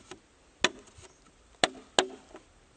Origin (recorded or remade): recorded